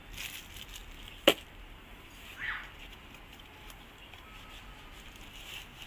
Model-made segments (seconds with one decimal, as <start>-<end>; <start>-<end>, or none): none